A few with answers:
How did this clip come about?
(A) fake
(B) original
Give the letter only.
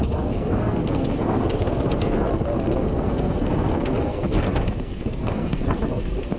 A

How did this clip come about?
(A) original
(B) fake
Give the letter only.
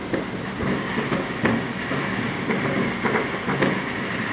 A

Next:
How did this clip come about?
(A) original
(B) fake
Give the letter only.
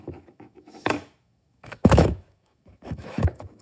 B